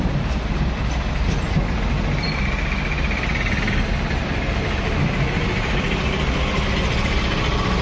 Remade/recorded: recorded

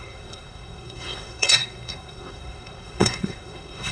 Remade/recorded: remade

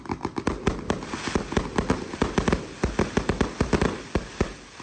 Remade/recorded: recorded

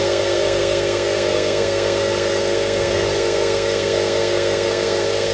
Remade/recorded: remade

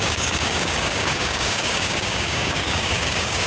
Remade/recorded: remade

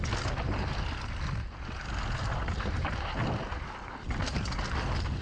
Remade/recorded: recorded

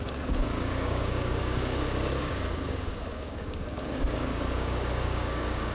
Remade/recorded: remade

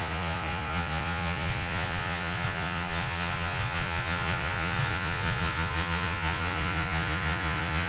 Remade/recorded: remade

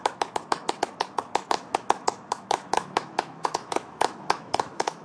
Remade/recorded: remade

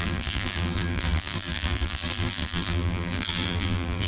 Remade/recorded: remade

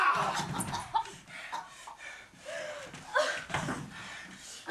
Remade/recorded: recorded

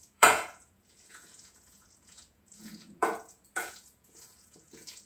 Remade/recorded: remade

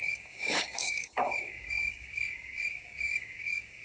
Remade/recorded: remade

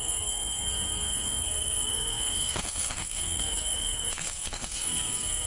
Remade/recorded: remade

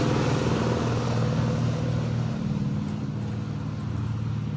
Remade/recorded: recorded